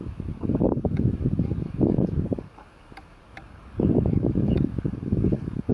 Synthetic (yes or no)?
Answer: yes